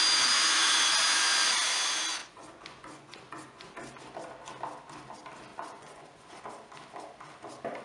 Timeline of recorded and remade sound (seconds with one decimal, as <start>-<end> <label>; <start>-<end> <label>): 0.0-2.2 recorded; 2.2-3.7 remade; 3.7-5.5 recorded; 5.5-6.4 remade; 6.4-7.8 recorded

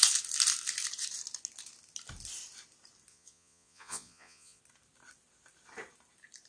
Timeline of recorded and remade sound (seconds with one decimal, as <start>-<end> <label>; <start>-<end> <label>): 0.0-3.1 recorded; 3.1-4.6 remade; 4.6-6.5 recorded

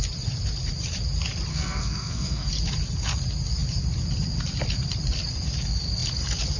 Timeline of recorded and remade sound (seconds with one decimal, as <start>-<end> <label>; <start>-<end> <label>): 0.0-1.5 recorded; 1.5-2.5 remade; 2.5-6.6 recorded

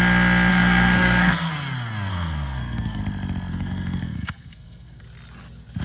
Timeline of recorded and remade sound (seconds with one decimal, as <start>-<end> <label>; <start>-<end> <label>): 0.0-0.5 recorded; 0.5-1.5 remade; 1.5-2.1 recorded; 2.1-3.0 remade; 3.0-3.5 recorded; 3.5-5.0 remade; 5.0-5.8 recorded

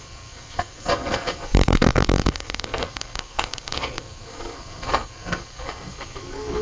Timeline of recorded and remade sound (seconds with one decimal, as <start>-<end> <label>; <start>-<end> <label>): 0.0-6.6 remade

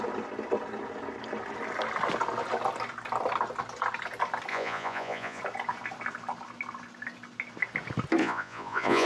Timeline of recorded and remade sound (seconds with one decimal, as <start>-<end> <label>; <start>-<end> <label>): 0.0-4.5 recorded; 4.5-5.4 remade; 5.4-8.2 recorded; 8.2-9.1 remade

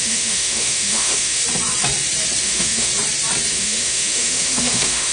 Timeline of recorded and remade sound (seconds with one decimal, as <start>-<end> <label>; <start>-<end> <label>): 0.0-1.4 remade; 1.4-2.4 recorded; 2.4-2.9 remade; 2.9-3.5 recorded; 3.5-5.1 remade